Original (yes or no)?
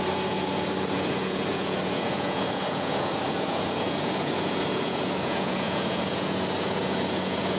no